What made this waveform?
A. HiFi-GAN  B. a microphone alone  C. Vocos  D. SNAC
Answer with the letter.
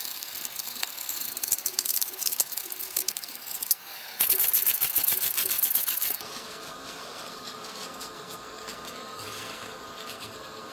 D